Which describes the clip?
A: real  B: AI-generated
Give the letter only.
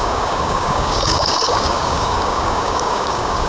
B